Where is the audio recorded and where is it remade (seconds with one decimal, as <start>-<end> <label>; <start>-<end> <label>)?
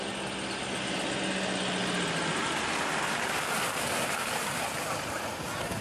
0.0-5.8 recorded